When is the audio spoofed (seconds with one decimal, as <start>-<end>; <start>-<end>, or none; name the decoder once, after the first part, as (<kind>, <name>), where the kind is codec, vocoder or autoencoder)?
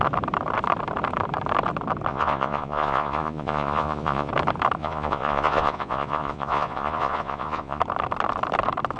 2.1-4.3 (vocoder, Vocos); 4.8-7.8